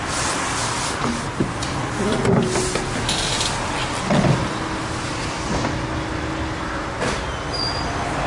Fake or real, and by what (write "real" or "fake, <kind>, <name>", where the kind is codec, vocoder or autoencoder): real